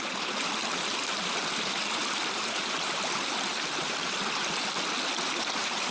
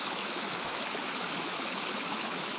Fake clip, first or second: second